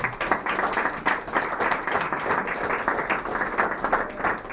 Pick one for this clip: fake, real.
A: real